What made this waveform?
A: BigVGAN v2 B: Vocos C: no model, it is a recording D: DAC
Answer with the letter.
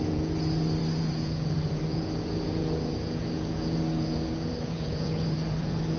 B